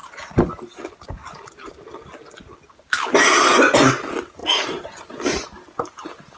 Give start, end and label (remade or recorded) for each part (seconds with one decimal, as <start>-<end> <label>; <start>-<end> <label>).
0.0-4.4 recorded; 4.4-4.9 remade; 4.9-6.4 recorded